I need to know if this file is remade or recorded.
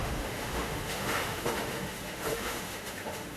remade